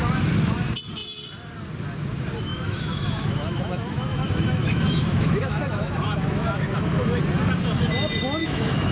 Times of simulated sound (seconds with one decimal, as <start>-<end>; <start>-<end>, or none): 2.5-7.2; 8.4-8.9